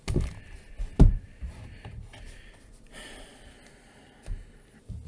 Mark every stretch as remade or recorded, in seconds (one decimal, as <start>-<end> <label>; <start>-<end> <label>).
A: 0.0-5.1 recorded